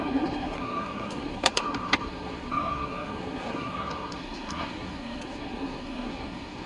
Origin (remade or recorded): remade